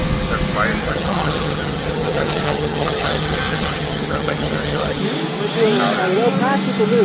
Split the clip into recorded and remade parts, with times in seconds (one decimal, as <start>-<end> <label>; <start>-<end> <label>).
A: 0.0-0.8 recorded; 0.8-5.0 remade; 5.0-7.0 recorded